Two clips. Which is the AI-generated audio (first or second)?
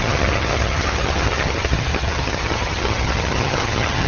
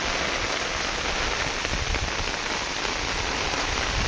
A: first